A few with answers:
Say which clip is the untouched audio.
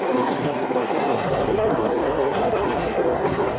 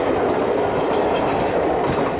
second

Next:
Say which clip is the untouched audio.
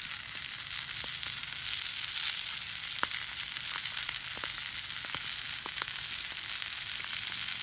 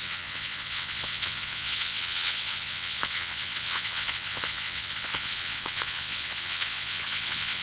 first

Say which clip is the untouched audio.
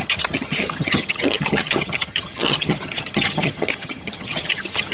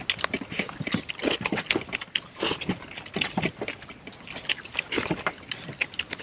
second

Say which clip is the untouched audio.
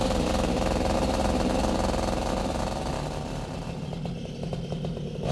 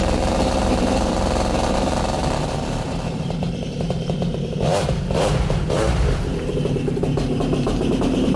first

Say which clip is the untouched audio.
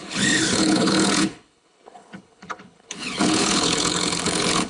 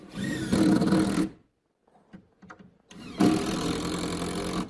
second